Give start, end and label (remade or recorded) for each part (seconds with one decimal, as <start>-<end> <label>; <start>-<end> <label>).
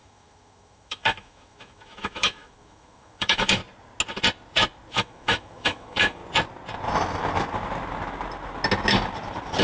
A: 0.0-3.6 remade; 3.6-4.9 recorded; 4.9-6.2 remade; 6.2-9.6 recorded